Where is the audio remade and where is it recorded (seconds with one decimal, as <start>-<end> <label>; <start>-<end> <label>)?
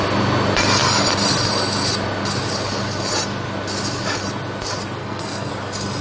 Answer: 0.0-5.0 recorded; 5.0-5.5 remade; 5.5-6.0 recorded